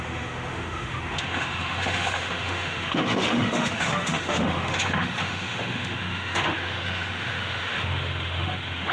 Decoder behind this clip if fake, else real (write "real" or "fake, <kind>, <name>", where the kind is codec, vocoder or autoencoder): fake, autoencoder, DAC-VAE